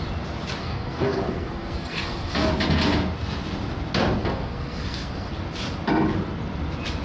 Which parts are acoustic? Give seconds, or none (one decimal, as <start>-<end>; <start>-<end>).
0.0-0.6; 2.5-4.2; 5.3-7.0